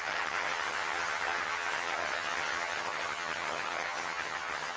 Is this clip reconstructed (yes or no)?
yes